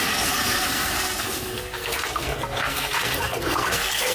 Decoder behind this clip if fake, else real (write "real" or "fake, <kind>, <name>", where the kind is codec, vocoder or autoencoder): fake, codec, SNAC